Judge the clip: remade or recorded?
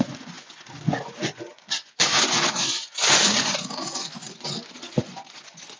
remade